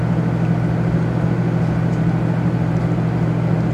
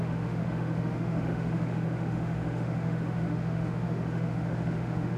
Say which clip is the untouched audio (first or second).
first